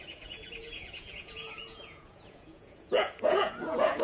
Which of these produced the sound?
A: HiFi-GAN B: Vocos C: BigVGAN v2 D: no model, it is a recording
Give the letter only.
B